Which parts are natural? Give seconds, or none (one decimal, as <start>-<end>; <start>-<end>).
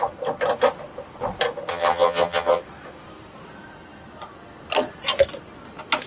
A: 0.0-1.7; 2.6-6.1